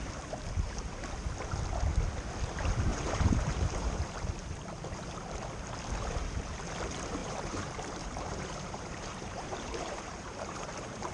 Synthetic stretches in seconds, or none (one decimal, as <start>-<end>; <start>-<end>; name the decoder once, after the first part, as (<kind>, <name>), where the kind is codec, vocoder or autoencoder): 2.9-4.1 (vocoder, BigVGAN v2); 7.2-11.1